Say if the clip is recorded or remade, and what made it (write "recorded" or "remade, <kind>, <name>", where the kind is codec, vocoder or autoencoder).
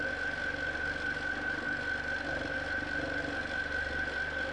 recorded